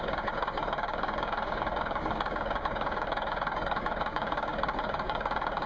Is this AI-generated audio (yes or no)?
yes